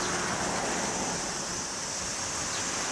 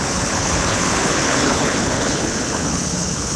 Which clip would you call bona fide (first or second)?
first